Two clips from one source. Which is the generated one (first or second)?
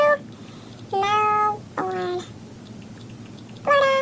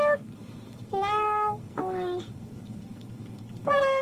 second